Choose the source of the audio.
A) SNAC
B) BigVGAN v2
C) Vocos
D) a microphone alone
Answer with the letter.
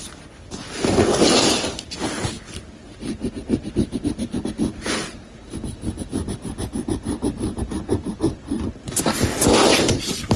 D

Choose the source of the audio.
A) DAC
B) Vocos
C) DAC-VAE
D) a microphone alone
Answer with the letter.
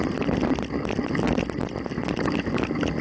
D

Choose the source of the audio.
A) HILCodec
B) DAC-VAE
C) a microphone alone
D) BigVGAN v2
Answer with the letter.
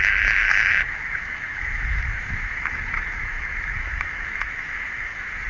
B